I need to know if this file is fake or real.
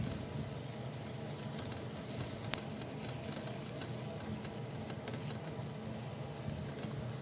real